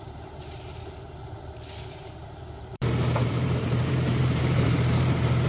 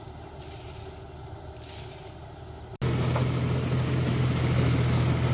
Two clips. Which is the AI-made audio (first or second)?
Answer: first